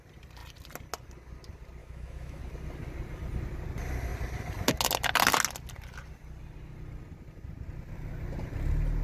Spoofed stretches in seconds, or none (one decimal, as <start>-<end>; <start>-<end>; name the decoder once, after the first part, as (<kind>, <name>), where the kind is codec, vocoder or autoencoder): 1.8-2.4 (autoencoder, DAC-VAE)